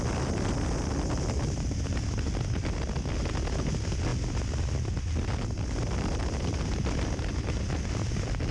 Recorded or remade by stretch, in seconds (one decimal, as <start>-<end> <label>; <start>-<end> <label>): 0.0-8.5 recorded